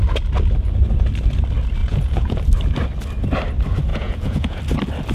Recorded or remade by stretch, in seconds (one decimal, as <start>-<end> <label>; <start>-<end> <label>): 0.0-1.8 recorded; 1.8-2.4 remade; 2.4-3.9 recorded; 3.9-4.6 remade; 4.6-5.1 recorded